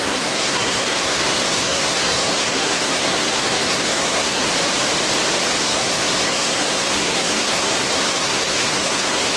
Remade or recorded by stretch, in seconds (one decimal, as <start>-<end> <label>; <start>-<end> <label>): 0.0-4.5 remade; 4.5-5.6 recorded; 5.6-9.4 remade